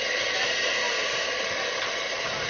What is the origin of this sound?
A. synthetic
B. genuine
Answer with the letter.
B